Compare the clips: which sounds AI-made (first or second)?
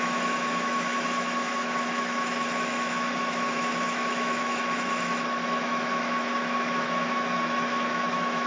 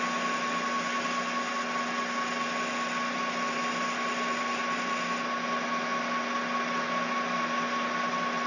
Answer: first